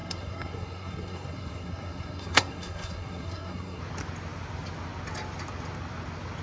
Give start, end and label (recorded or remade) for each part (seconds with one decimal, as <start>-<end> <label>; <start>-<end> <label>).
0.0-3.8 remade; 3.8-6.4 recorded